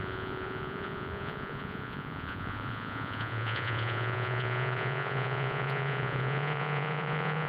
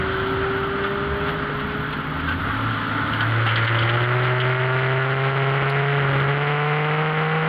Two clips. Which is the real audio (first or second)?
second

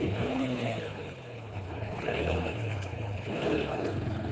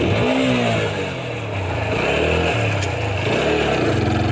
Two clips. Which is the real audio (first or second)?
second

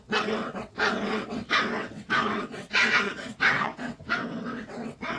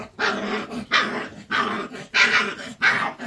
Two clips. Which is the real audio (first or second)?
second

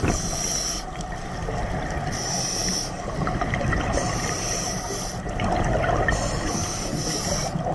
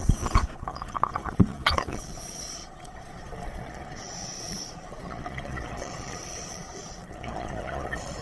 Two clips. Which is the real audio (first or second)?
first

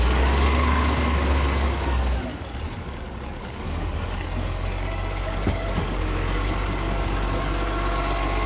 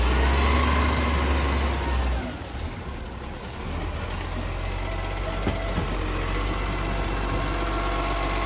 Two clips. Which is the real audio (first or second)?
second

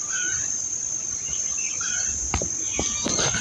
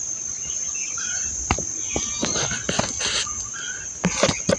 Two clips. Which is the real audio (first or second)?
second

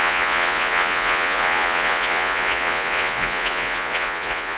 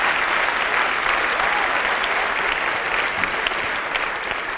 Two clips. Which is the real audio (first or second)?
second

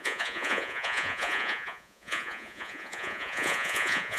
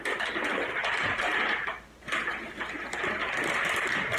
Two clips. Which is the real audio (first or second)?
second